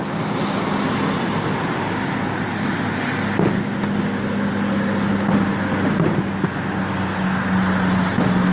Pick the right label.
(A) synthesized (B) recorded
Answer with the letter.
B